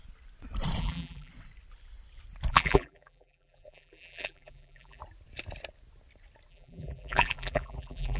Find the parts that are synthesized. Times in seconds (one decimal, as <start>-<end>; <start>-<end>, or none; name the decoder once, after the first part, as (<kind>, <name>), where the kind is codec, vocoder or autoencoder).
0.8-1.3 (vocoder, BigVGAN v2); 2.5-5.0; 6.5-8.2